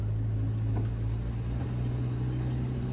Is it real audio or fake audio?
real